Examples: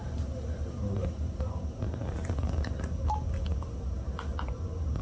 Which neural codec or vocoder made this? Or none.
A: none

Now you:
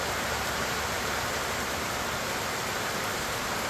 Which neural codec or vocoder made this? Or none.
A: vocoder, BigVGAN v2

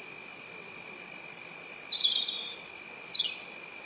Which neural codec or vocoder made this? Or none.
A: vocoder, BigVGAN v2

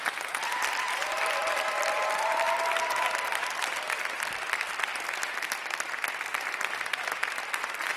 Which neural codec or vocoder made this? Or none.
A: none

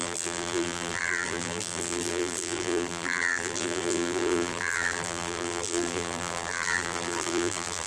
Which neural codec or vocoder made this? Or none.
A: vocoder, BigVGAN v2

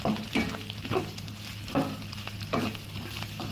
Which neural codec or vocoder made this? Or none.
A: vocoder, BigVGAN v2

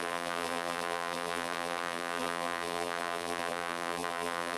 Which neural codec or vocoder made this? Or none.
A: vocoder, BigVGAN v2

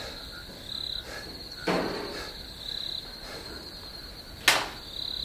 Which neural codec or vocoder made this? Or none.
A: none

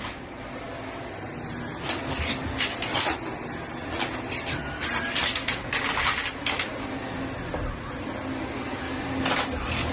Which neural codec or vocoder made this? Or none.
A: none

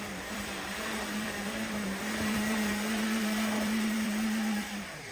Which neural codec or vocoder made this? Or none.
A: vocoder, BigVGAN v2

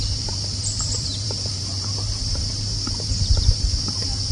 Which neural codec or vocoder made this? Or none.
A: vocoder, BigVGAN v2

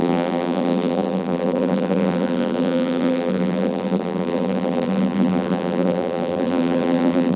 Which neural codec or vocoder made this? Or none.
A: vocoder, BigVGAN v2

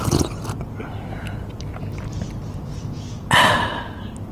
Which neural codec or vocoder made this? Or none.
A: none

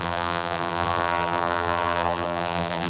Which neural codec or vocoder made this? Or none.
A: vocoder, BigVGAN v2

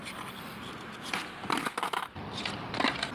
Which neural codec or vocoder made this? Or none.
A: none